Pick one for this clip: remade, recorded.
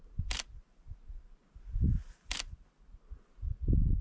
recorded